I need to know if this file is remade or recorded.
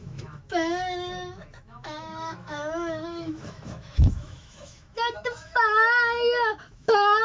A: remade